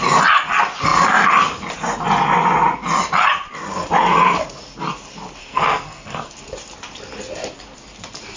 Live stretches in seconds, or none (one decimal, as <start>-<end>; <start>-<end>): 0.0-5.4; 6.3-8.4